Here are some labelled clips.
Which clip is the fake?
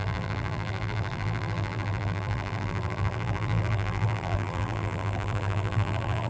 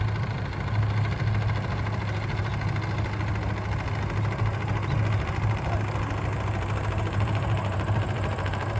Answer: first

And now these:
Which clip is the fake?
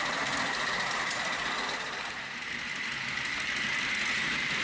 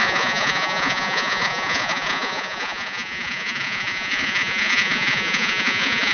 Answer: second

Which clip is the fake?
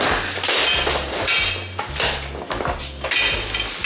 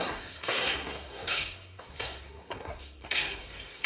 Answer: second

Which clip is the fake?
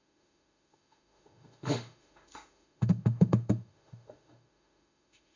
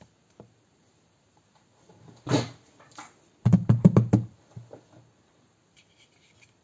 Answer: first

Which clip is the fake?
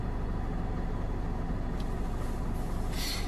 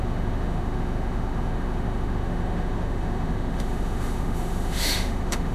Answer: second